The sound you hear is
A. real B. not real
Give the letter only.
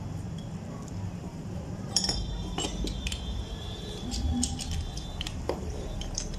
B